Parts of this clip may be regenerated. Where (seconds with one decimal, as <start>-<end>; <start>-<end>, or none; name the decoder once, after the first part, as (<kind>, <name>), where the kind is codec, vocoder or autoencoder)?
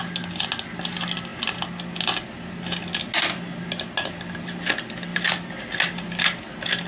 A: none